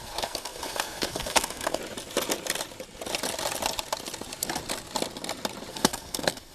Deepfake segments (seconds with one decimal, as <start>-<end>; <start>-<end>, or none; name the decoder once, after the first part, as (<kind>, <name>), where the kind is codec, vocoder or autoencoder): 0.0-1.8 (codec, SNAC); 5.7-6.5